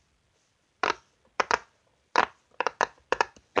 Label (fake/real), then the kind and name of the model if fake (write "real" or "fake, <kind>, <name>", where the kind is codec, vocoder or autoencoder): fake, vocoder, BigVGAN v2